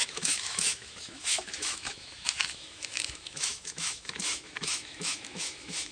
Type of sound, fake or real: fake